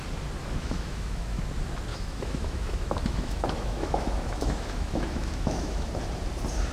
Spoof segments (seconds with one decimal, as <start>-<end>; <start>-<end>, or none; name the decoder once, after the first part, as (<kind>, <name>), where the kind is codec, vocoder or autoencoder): 0.4-1.4 (autoencoder, DAC-VAE); 1.9-5.9